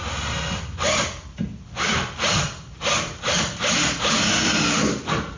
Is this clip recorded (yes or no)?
no